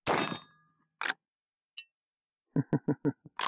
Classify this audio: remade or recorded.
recorded